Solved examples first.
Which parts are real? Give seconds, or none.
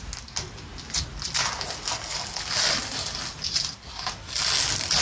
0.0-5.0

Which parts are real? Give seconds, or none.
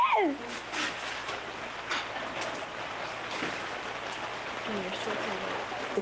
0.0-6.0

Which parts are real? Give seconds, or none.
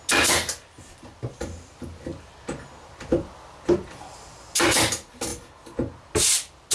0.0-6.7